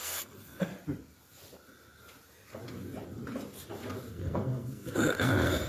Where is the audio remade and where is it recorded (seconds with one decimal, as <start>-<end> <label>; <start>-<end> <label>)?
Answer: 0.0-0.7 remade; 0.7-4.1 recorded; 4.1-5.7 remade